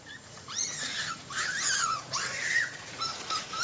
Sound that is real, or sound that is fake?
fake